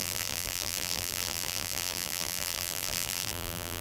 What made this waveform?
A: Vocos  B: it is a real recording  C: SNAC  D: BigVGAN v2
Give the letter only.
D